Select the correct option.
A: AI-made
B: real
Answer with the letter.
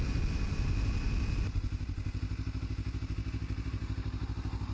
B